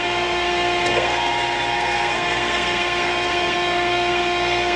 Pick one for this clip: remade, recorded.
remade